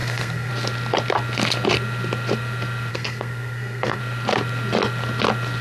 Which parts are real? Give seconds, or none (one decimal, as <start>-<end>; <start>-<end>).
0.5-2.9; 4.0-5.6